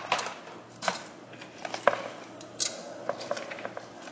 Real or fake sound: real